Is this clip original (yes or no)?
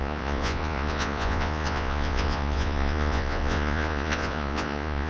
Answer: no